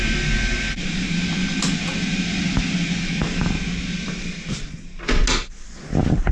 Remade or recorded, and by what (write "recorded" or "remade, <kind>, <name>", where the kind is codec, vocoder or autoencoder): recorded